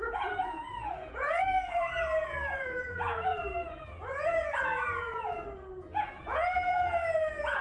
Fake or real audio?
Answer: fake